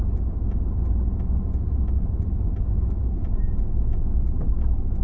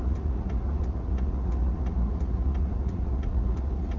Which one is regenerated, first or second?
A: second